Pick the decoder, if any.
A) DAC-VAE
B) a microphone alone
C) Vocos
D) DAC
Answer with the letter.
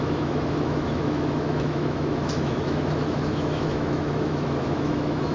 A